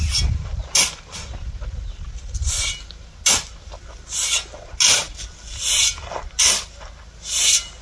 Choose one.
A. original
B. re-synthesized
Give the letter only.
A